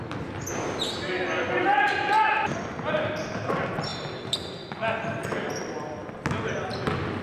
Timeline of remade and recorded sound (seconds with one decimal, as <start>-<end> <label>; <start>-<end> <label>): 0.0-3.9 recorded; 3.9-4.7 remade; 4.7-7.2 recorded